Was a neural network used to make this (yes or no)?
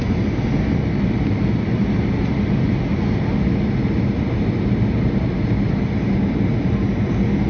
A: no